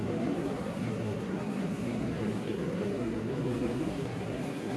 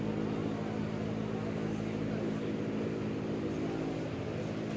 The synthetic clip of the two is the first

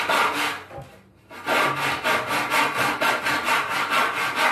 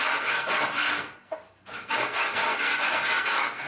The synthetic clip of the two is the second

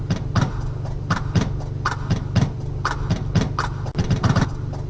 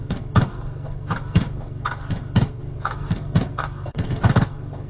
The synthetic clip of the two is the second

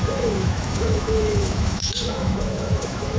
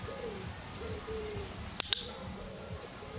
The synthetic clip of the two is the first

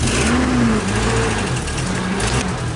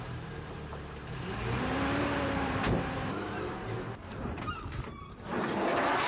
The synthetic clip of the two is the second